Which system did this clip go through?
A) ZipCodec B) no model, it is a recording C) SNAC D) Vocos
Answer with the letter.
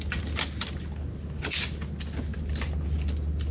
B